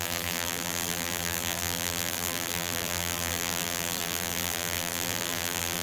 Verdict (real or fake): fake